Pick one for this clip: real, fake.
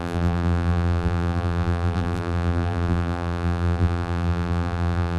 fake